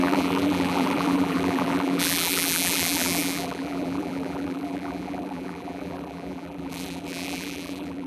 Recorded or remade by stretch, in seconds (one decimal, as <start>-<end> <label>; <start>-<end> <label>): 0.0-8.1 remade